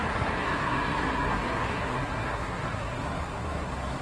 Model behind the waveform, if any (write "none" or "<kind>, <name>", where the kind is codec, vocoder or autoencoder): codec, SNAC